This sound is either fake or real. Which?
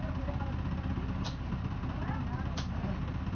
real